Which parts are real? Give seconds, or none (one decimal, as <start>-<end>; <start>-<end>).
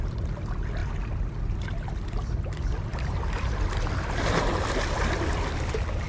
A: 0.0-6.1